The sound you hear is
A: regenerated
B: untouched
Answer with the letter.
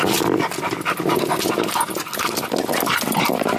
B